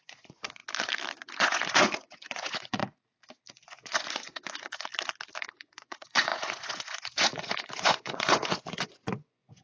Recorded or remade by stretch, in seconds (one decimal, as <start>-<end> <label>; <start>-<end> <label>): 0.0-0.6 remade; 0.6-1.3 recorded; 1.3-2.8 remade; 2.8-3.5 recorded; 3.5-4.9 remade; 4.9-5.5 recorded; 5.5-9.6 remade